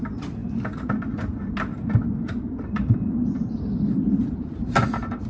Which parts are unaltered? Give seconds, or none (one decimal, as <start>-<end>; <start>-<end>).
0.4-2.1